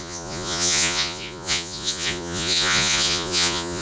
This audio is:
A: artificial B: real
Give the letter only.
A